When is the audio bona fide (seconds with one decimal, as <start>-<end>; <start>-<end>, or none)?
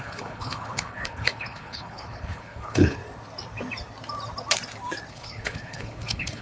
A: 3.0-5.1